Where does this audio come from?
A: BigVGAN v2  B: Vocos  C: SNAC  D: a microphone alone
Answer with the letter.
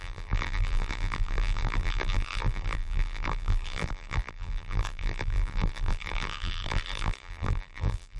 A